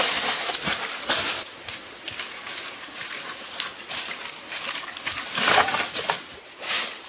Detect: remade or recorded recorded